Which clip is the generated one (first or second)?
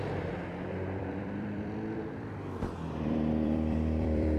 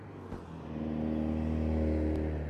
first